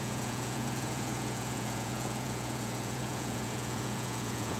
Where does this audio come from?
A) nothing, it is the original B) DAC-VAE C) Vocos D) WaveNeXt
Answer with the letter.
C